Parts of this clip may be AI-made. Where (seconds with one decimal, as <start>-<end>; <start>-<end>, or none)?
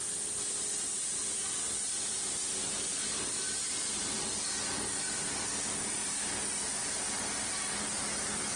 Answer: none